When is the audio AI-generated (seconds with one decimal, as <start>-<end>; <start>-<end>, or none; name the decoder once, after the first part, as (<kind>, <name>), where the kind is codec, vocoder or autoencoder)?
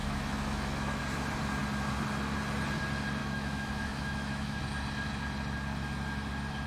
0.0-1.0 (autoencoder, DAC-VAE); 3.2-4.6